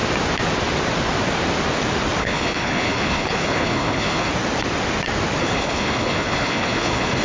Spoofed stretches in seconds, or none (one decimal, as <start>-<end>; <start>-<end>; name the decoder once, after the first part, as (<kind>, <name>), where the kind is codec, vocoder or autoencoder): 2.2-4.3 (codec, HILCodec); 5.4-7.2